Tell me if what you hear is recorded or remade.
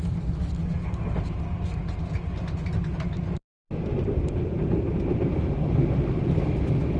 recorded